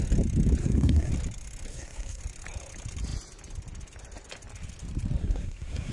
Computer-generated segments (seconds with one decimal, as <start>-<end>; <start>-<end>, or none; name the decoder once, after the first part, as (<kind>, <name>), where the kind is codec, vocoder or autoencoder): 0.6-1.1 (codec, SNAC); 1.7-2.2; 5.2-5.9